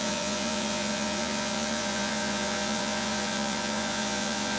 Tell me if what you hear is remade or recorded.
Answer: remade